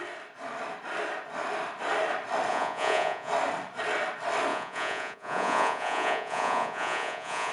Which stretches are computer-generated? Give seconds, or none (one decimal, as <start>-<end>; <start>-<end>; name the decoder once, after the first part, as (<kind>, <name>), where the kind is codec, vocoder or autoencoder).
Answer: 2.5-3.3 (vocoder, Vocos); 4.5-7.5